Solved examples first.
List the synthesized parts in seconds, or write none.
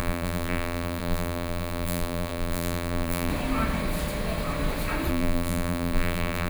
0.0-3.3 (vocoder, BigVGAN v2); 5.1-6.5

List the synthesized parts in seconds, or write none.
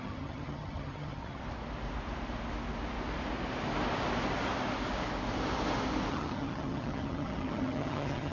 0.0-1.4 (vocoder, HiFi-GAN); 6.1-8.3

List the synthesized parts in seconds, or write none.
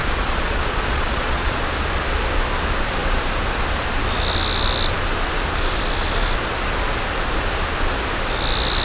0.0-1.6 (vocoder, Vocos)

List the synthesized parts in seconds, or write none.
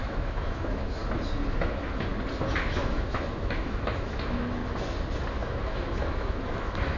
0.0-1.0 (autoencoder, DAC-VAE); 1.6-2.1; 2.6-4.6; 5.3-7.0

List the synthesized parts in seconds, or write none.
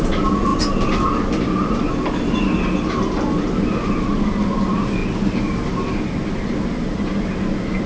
none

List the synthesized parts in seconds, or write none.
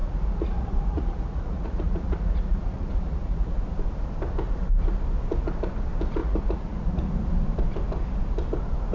0.0-3.5 (vocoder, Vocos); 6.2-7.1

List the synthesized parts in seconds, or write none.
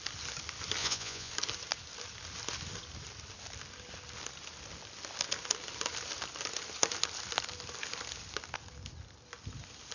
0.8-1.3 (vocoder, Vocos)